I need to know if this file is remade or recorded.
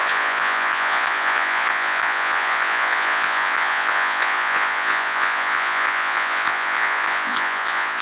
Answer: remade